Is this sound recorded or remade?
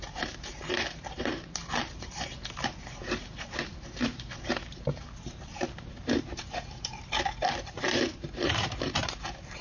remade